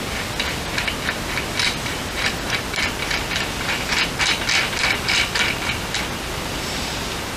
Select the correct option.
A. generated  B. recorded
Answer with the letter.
B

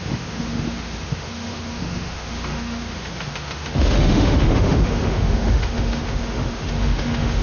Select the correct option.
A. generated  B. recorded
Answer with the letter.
A